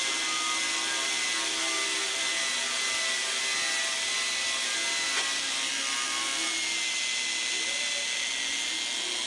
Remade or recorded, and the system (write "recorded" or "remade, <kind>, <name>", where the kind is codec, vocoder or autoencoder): recorded